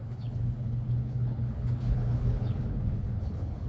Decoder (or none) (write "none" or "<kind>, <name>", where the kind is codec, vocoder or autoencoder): codec, HILCodec